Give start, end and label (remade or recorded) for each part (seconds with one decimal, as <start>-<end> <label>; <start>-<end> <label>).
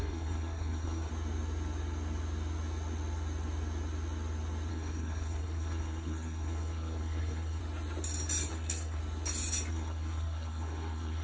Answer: 0.0-1.1 remade; 1.1-4.7 recorded; 4.7-7.6 remade; 7.6-8.5 recorded; 8.5-9.0 remade; 9.0-9.7 recorded; 9.7-11.2 remade